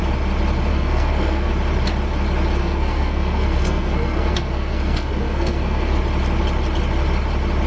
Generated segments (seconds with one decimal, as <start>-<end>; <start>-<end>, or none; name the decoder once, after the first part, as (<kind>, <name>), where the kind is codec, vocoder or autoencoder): 0.7-1.5 (codec, SNAC); 2.6-6.0